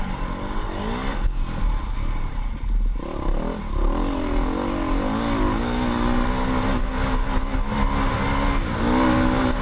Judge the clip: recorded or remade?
recorded